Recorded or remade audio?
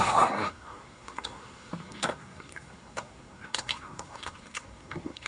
remade